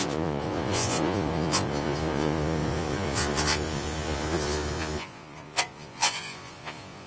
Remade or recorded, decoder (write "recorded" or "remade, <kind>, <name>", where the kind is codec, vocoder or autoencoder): remade, vocoder, Vocos